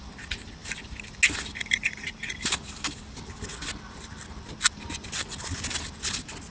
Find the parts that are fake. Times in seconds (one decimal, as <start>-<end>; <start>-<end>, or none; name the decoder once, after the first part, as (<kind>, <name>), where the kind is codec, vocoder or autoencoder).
none